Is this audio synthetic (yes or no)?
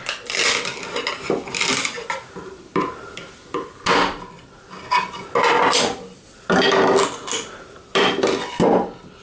no